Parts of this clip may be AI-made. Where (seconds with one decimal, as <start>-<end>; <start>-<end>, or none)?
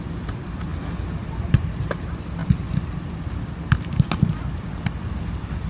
0.0-0.7; 1.5-2.4; 4.8-5.7